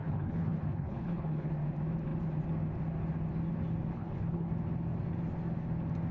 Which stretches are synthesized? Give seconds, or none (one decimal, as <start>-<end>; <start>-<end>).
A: 0.0-1.5; 3.9-4.5